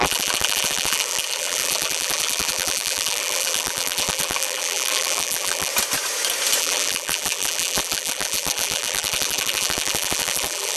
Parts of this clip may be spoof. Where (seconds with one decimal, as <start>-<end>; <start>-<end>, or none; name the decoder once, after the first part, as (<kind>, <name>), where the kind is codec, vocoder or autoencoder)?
0.0-5.7 (vocoder, BigVGAN v2); 6.6-10.8